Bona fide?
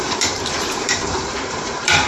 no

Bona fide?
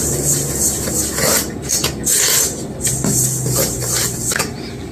yes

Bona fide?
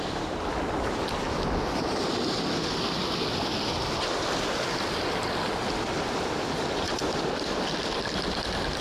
yes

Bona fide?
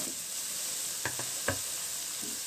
yes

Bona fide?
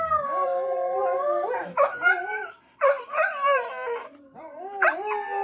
no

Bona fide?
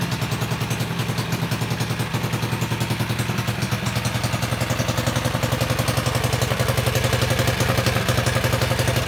yes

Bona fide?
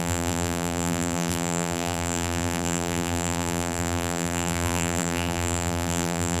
no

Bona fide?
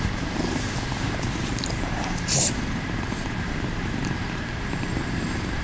no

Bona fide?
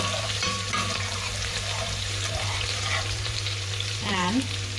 no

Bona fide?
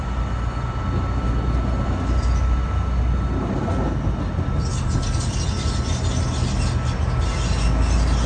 yes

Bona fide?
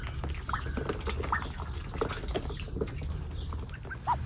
yes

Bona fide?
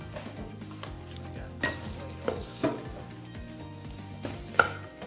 yes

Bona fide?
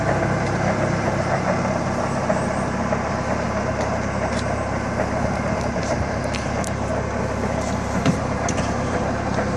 no